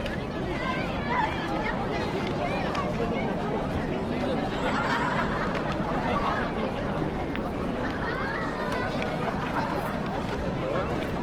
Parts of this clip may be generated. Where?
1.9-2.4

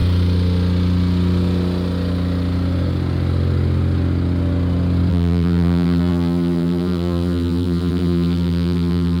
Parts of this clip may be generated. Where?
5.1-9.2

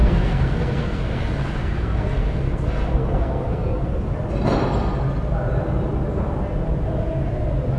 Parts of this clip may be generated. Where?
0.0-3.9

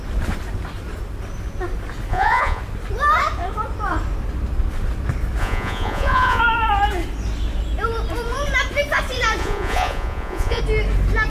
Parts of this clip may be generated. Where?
2.1-2.6; 5.4-6.4; 9.4-10.6

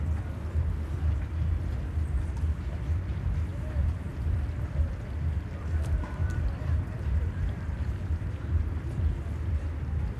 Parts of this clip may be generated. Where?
3.5-4.9; 6.2-8.4

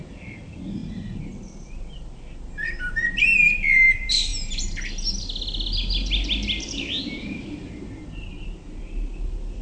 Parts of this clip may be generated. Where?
none

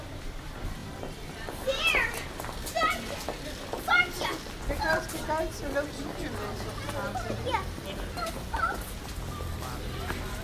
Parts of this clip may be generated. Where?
0.0-4.3; 8.0-10.4

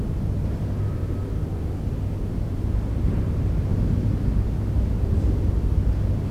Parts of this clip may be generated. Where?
0.0-3.7